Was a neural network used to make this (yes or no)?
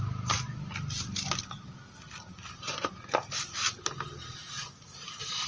no